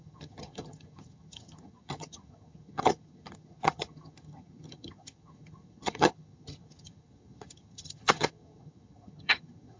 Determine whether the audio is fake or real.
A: fake